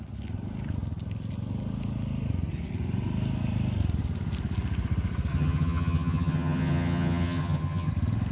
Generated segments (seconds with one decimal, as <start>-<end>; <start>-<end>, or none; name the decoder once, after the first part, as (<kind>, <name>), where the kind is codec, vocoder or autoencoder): 5.3-7.9 (vocoder, HiFi-GAN)